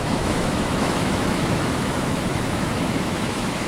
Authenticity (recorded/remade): remade